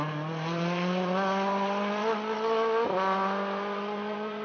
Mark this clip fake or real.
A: real